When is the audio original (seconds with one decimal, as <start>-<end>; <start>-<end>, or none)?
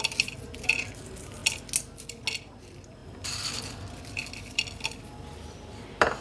1.4-2.5